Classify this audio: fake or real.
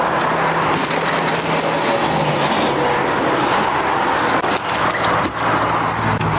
real